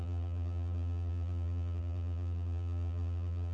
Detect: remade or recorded remade